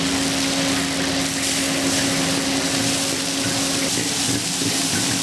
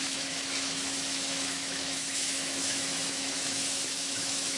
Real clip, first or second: first